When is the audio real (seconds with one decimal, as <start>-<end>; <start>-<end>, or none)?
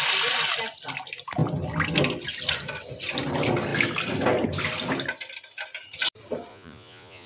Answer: 0.0-6.5